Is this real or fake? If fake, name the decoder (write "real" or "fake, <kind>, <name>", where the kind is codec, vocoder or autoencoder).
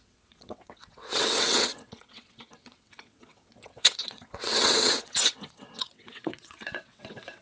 fake, vocoder, WaveNeXt